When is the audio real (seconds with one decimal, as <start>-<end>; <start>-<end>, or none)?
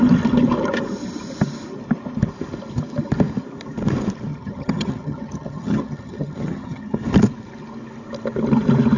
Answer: 0.0-4.3; 7.0-9.0